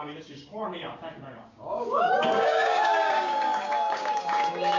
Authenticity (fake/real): fake